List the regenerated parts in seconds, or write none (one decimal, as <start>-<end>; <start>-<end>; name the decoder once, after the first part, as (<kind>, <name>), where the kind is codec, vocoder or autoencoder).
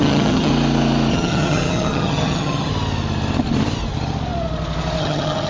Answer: 0.0-0.5 (vocoder, HiFi-GAN); 1.1-2.7; 5.0-5.5